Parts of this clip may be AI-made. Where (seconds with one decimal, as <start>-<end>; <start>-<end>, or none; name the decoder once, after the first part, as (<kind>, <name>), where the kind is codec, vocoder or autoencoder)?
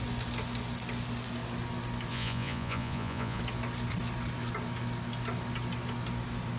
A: 2.1-3.4 (vocoder, Vocos)